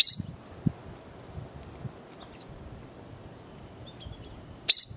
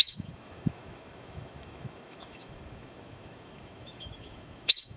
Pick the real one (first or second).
first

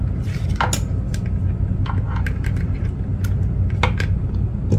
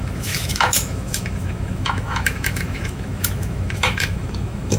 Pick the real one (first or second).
first